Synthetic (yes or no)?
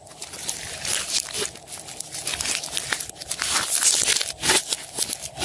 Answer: no